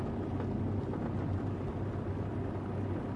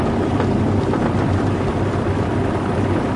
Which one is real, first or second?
first